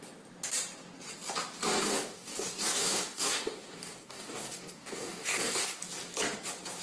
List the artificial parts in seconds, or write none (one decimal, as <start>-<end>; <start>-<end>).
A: 1.7-5.8